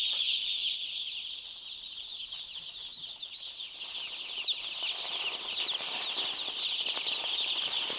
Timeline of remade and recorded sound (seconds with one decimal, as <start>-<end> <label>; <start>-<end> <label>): 0.0-8.0 recorded